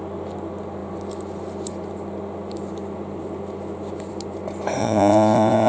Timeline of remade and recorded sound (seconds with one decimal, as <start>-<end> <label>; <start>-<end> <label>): 0.0-4.8 recorded; 4.8-5.7 remade